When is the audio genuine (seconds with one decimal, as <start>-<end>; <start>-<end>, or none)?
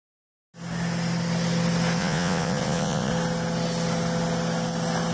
0.0-2.0; 3.1-5.1